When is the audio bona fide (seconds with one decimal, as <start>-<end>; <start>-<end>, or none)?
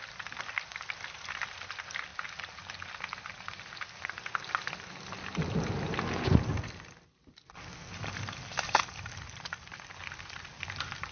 0.0-11.1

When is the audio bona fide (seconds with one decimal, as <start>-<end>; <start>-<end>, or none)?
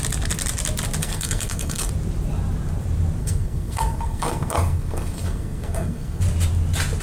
0.0-1.0; 1.9-3.2; 6.2-7.0